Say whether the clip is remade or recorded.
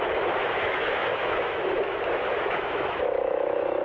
remade